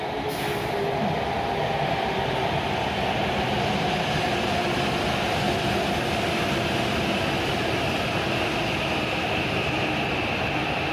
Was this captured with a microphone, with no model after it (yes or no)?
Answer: yes